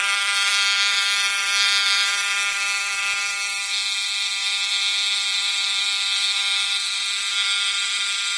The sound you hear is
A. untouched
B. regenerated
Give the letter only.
B